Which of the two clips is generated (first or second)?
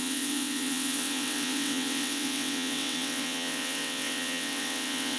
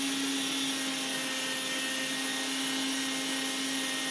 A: first